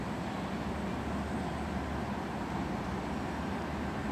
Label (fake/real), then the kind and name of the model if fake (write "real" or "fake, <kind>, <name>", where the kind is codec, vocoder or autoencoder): real